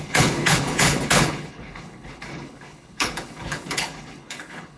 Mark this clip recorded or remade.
remade